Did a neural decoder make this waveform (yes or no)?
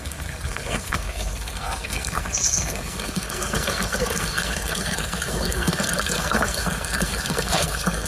yes